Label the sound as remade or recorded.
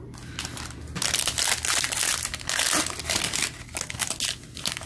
recorded